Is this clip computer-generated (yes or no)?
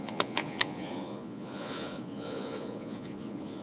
yes